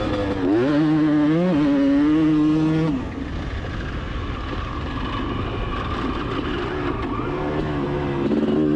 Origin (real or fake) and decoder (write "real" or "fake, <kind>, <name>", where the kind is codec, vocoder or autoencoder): real